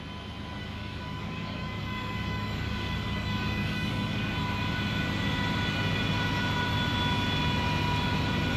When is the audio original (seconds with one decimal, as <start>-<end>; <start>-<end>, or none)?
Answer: 0.0-0.6; 4.3-8.6